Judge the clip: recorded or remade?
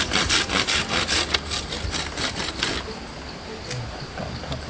recorded